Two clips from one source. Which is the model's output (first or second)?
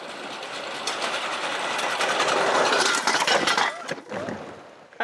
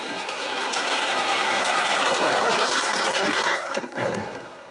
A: second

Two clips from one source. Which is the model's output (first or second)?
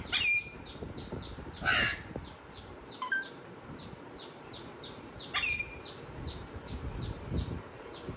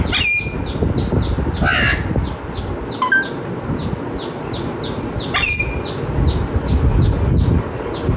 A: first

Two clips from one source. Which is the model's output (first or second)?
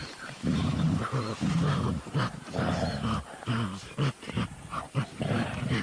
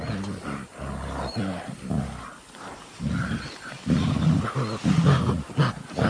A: first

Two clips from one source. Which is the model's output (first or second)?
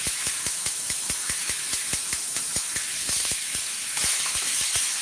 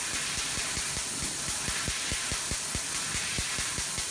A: first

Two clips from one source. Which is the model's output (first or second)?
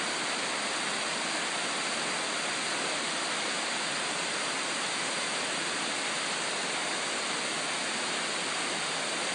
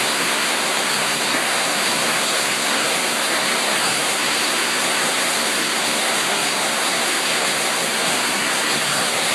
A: second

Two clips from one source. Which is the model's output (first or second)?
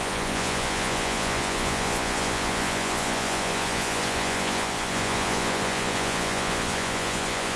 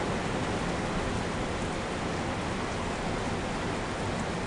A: first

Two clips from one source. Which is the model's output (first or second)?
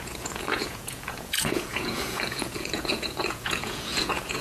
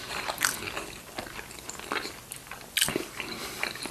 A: first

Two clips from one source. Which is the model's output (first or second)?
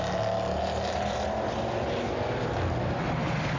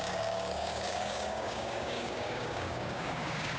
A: second